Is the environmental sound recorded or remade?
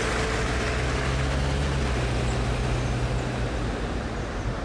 recorded